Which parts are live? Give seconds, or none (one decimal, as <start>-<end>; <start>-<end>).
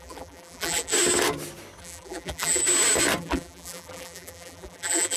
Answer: 0.9-1.8; 2.6-3.2